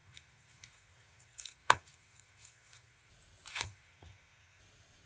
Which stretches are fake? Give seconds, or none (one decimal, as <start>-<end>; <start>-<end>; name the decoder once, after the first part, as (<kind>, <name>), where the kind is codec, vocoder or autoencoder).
0.0-3.1 (codec, SNAC); 3.5-4.6